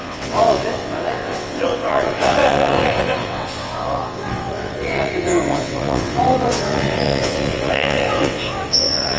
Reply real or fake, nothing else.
fake